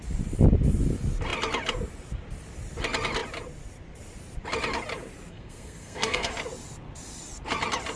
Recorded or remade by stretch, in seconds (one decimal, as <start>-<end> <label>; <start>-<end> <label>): 0.0-5.3 recorded; 5.3-6.3 remade; 6.3-8.0 recorded